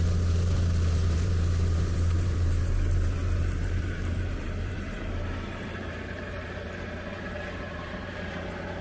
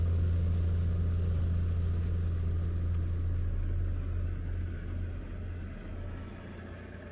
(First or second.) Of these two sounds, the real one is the second